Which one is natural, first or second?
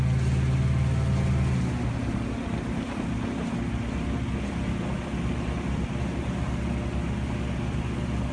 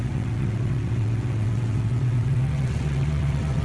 first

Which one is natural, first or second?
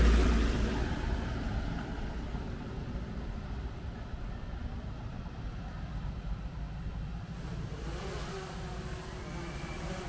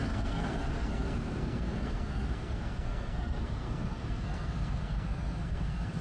first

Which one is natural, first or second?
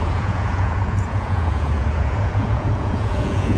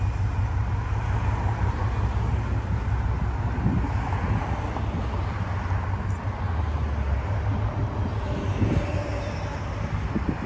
second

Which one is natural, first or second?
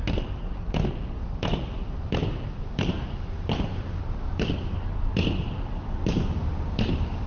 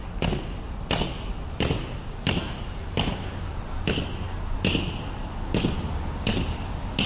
second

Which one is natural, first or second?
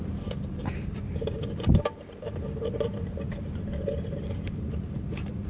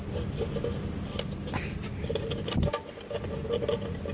second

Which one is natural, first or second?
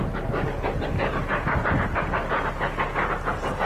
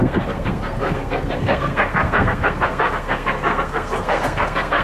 first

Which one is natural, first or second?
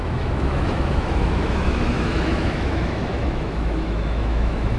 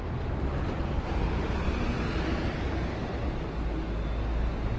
second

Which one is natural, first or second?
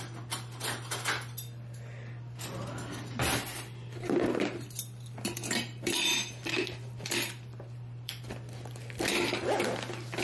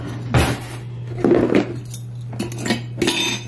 second